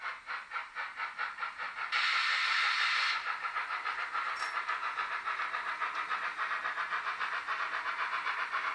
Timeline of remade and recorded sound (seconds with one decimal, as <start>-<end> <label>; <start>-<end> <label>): 0.0-8.7 recorded